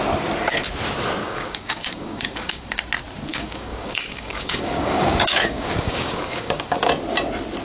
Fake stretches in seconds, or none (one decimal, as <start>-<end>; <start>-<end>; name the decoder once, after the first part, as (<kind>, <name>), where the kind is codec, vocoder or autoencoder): 1.2-2.9 (codec, DAC); 3.3-6.9